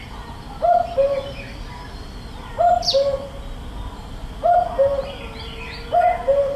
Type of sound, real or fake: real